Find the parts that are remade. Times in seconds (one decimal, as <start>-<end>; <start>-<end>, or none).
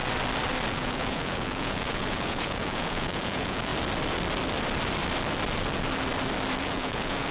0.7-3.7; 6.6-7.3